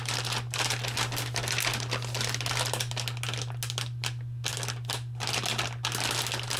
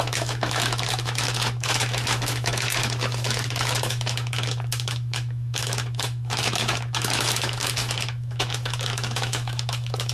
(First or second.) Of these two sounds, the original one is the first